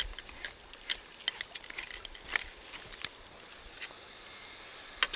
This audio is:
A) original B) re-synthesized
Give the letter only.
A